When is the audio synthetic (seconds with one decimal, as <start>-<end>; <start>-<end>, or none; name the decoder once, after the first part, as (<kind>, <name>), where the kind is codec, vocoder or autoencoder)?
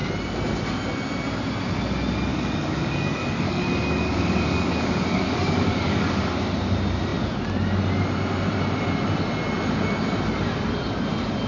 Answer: 2.3-6.3 (codec, DAC)